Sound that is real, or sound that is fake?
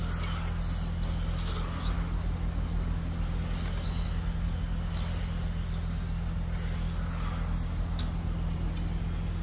real